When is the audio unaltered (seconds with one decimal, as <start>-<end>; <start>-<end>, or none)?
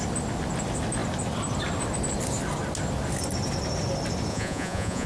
0.0-4.3